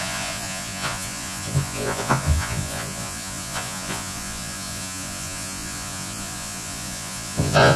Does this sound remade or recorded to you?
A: remade